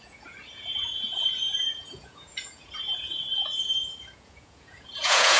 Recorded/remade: remade